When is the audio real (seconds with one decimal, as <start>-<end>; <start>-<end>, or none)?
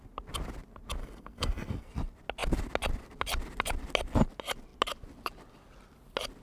0.0-1.0; 1.9-6.4